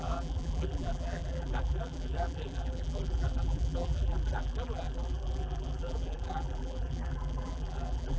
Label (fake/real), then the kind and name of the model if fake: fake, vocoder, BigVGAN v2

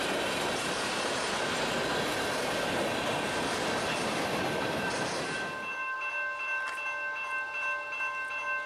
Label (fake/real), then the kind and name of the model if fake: real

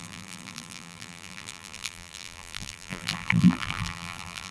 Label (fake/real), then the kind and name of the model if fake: fake, vocoder, BigVGAN v2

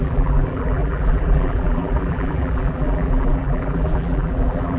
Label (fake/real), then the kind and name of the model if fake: fake, vocoder, BigVGAN v2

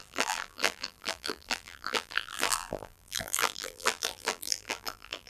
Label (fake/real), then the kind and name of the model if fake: fake, vocoder, BigVGAN v2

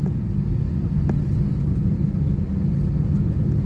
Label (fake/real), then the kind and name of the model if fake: real